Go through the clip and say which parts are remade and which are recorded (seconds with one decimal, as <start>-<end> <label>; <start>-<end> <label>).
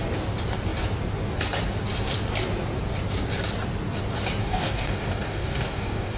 0.0-4.4 recorded; 4.4-6.2 remade